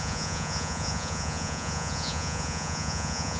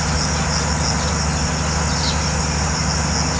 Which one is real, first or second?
second